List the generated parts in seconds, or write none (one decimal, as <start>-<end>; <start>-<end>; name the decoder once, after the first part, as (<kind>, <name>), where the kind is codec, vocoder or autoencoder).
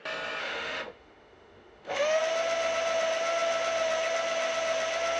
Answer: 0.4-2.2 (autoencoder, DAC-VAE)